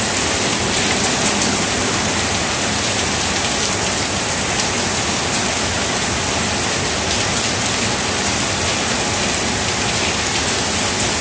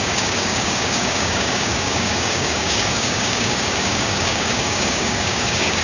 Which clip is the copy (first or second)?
second